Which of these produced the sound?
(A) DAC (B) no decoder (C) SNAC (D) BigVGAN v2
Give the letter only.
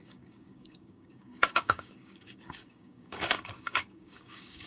A